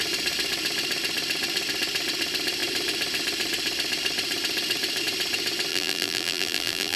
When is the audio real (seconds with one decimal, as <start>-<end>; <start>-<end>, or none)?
0.0-5.7